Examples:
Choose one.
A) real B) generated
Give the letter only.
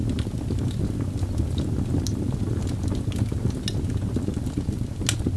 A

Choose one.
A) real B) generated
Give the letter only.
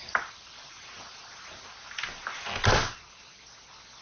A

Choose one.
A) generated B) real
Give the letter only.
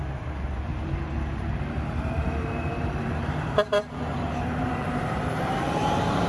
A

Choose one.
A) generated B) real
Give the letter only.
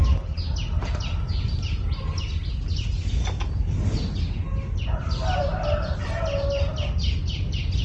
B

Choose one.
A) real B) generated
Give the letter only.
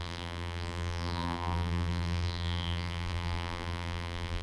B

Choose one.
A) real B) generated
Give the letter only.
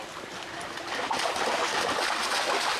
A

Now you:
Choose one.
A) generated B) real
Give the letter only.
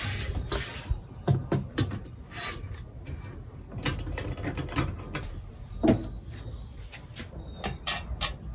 B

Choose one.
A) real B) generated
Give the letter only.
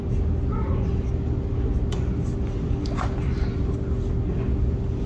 A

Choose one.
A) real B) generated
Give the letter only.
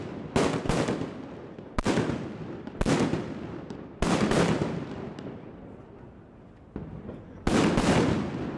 A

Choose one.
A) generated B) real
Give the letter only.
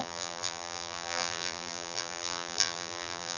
A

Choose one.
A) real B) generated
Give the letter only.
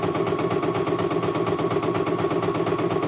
A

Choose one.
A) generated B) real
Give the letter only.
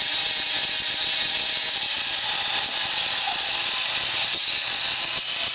B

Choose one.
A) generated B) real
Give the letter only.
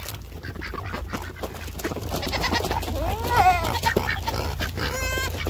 B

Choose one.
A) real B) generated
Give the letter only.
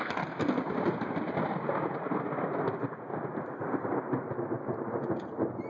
A